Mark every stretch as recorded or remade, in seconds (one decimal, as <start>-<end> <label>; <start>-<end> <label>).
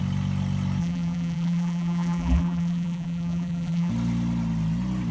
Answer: 0.0-0.8 recorded; 0.8-3.9 remade; 3.9-5.1 recorded